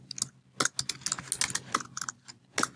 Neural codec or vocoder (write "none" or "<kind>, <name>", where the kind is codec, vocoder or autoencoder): none